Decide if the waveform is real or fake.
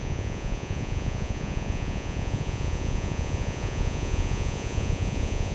fake